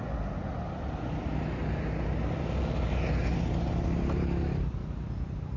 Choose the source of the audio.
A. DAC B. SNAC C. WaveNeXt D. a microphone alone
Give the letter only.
D